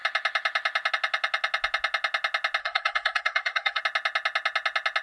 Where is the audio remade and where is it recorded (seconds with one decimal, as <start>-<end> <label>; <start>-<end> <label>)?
0.0-2.6 recorded; 2.6-3.8 remade; 3.8-5.0 recorded